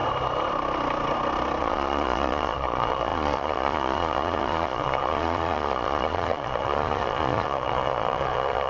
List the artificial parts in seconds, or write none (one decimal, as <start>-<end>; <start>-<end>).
1.6-8.7